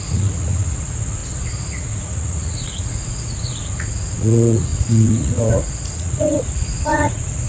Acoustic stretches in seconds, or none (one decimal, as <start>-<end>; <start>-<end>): 1.2-1.7